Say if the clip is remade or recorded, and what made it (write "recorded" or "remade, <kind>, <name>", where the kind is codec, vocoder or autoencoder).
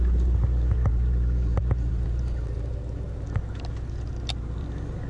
recorded